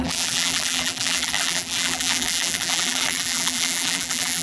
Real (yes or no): no